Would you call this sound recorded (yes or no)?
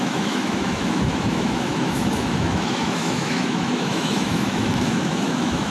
no